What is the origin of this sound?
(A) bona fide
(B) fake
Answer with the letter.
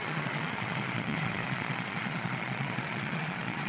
B